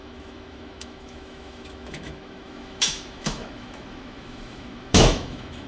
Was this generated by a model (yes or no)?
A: yes